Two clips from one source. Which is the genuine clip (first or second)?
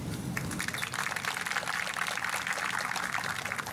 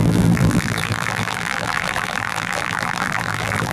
first